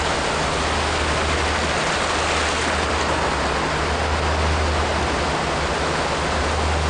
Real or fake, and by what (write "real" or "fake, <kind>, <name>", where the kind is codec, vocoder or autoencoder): real